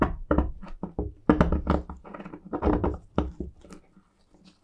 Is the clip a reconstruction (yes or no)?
no